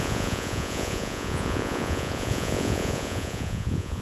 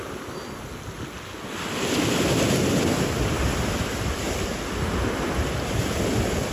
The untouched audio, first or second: second